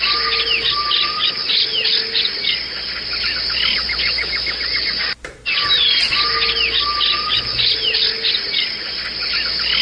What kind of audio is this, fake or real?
real